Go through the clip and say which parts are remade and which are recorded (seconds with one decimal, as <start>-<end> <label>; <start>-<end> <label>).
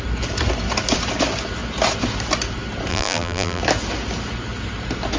0.0-2.9 recorded; 2.9-3.6 remade; 3.6-5.2 recorded